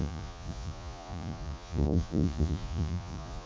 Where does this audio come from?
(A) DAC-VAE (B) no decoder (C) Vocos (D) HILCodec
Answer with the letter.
C